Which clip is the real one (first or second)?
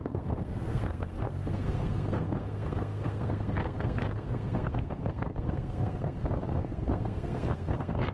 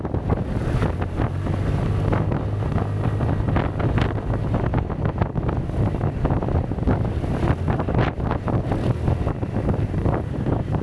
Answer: second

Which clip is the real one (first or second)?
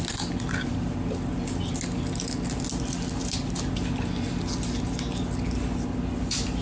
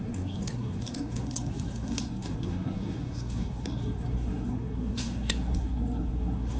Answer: first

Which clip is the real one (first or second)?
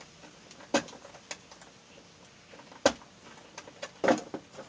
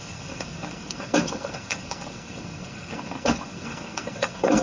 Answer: first